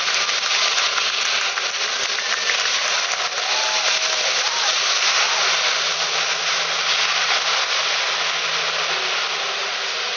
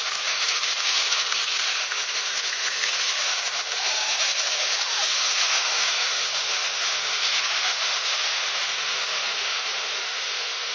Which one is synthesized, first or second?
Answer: second